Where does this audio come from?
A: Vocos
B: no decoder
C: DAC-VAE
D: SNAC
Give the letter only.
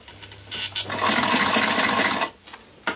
B